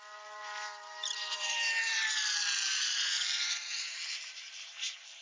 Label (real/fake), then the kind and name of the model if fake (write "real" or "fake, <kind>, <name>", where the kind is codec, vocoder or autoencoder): fake, vocoder, BigVGAN v2